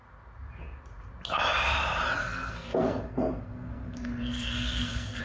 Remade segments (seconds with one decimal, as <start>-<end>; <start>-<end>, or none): 2.2-5.2

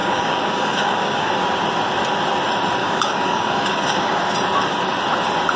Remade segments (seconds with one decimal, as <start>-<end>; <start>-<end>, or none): 0.0-1.3; 2.8-4.2

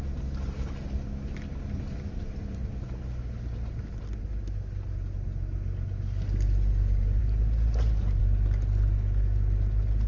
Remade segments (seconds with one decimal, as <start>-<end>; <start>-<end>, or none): none

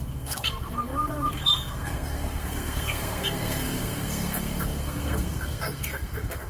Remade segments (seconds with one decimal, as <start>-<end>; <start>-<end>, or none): 0.0-6.5

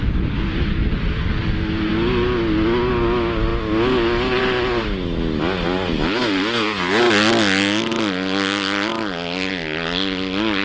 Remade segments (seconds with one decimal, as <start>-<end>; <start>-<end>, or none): none

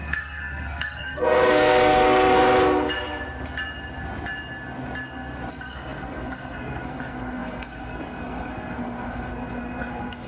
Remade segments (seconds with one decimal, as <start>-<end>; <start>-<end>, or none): 0.0-2.4; 5.5-10.3